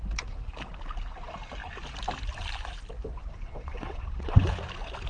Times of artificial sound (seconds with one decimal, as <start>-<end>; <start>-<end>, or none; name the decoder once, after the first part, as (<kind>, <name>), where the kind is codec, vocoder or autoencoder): 3.2-4.6 (vocoder, WaveNeXt)